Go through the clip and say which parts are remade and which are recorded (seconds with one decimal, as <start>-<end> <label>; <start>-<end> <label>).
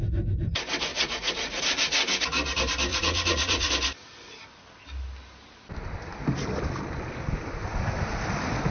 0.0-0.9 recorded; 0.9-1.6 remade; 1.6-2.9 recorded; 2.9-3.7 remade; 3.7-8.7 recorded